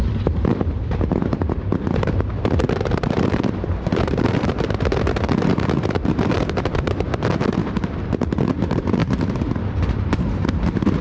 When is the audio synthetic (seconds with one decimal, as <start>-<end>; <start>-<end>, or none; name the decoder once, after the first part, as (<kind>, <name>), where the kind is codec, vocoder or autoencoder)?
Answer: 0.0-11.0 (vocoder, BigVGAN v2)